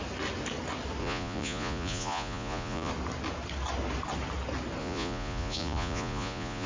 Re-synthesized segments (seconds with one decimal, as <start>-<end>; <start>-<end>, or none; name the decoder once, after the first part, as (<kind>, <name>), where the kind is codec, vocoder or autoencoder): 1.0-2.9 (vocoder, Vocos); 4.8-6.7